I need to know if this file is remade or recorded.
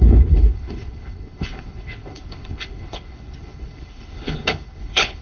remade